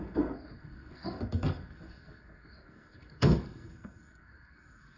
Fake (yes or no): yes